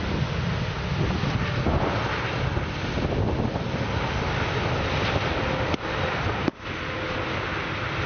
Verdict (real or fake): real